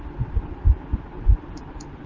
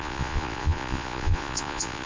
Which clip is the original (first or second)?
first